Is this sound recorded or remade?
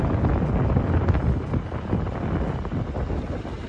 recorded